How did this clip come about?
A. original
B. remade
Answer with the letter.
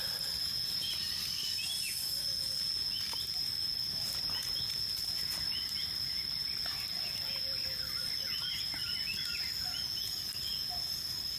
A